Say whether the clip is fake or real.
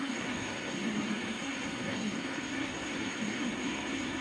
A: fake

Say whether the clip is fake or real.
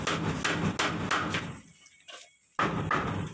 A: real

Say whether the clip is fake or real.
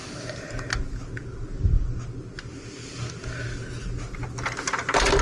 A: real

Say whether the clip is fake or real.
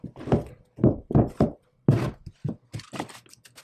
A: real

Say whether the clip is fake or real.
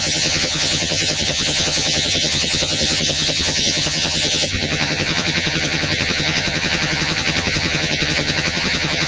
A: fake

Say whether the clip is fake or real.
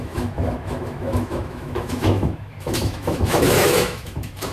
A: fake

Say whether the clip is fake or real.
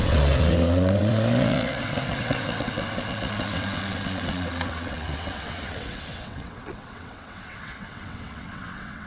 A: fake